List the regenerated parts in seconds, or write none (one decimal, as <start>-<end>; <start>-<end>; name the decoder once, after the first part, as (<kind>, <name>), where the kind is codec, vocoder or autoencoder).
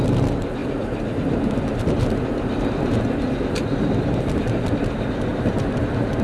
0.6-3.0 (vocoder, BigVGAN v2); 5.3-5.8